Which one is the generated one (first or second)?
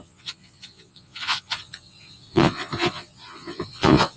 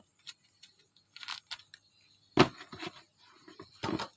first